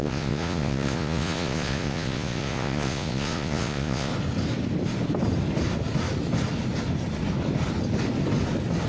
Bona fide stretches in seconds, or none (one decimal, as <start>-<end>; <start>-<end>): 4.1-8.9